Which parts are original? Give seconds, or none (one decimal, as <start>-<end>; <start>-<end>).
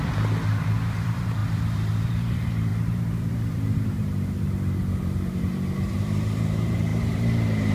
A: none